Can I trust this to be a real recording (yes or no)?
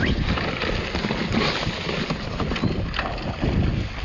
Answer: yes